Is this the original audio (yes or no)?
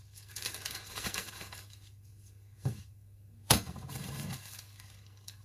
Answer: no